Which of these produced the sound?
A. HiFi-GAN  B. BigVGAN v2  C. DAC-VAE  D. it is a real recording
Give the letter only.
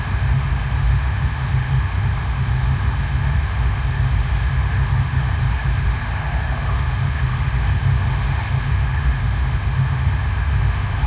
C